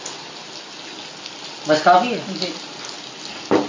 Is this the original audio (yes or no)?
yes